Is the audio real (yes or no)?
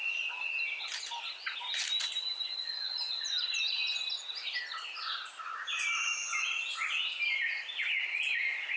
yes